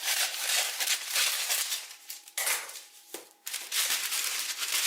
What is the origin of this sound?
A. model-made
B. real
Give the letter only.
A